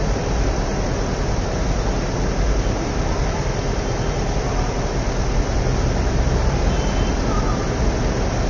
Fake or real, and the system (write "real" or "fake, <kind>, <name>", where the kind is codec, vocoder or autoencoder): real